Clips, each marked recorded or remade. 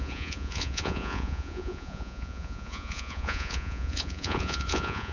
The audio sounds remade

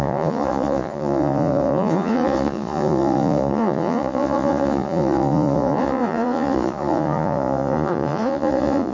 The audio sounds remade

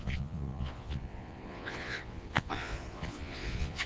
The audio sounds remade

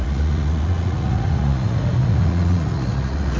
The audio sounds remade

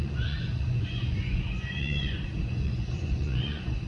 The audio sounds remade